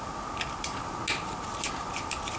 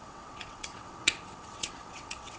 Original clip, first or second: first